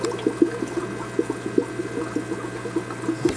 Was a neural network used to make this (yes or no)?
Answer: no